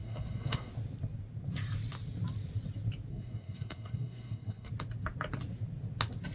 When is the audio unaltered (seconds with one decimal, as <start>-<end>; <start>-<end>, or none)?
0.7-3.1; 4.7-6.3

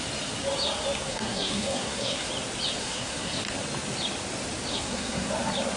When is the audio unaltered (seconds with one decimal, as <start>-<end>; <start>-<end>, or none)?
0.0-1.1; 2.3-2.8; 3.4-4.7; 5.3-5.8

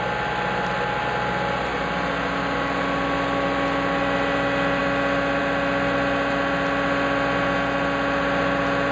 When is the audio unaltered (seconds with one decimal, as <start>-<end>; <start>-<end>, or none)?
0.0-8.9

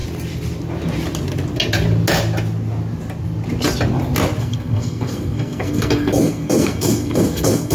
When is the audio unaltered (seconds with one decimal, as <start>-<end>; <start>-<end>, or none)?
0.0-4.4

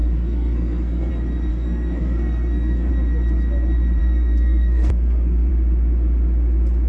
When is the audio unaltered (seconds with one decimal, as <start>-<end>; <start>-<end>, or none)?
1.1-1.5; 2.9-4.0; 5.5-6.9

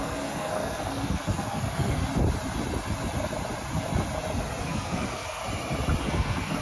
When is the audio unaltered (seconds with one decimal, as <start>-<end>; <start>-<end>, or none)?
2.0-4.6; 5.4-6.0

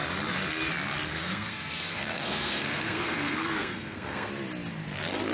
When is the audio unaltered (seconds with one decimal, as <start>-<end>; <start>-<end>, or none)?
0.0-1.1; 4.3-5.3